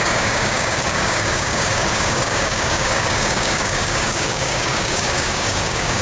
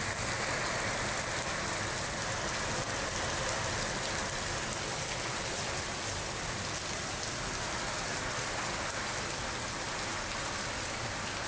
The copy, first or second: first